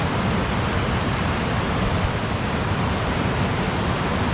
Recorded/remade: recorded